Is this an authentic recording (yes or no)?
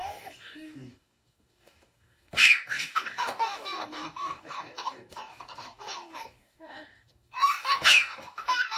no